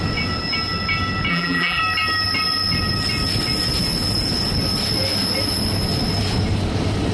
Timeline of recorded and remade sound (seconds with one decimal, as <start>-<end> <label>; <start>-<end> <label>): 0.0-1.3 recorded; 1.3-1.8 remade; 1.8-7.1 recorded